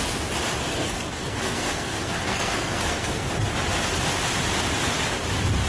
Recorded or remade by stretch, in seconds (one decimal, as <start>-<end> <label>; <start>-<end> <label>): 0.0-0.7 recorded; 0.7-3.3 remade; 3.3-5.7 recorded